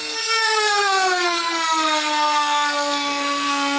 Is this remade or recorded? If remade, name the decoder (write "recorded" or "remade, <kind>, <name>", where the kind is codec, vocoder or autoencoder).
remade, codec, SNAC